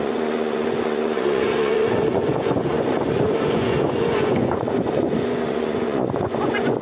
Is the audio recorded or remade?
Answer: remade